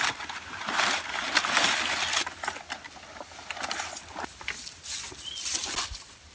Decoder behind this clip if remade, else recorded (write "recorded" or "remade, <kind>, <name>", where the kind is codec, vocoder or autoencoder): recorded